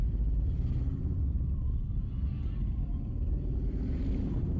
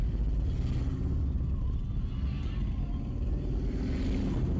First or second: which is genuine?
second